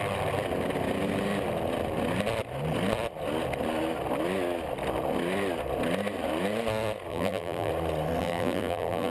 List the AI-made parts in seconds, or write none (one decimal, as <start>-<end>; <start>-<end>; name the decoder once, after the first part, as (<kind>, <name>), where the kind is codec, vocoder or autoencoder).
7.1-7.7 (vocoder, BigVGAN v2); 8.2-9.1